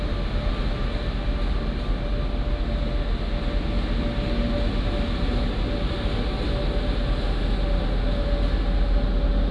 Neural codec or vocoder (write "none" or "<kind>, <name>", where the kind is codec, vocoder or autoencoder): none